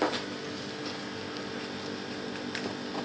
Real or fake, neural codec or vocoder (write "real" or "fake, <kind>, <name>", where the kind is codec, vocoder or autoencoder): real